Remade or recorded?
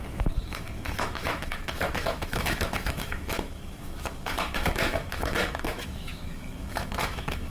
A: remade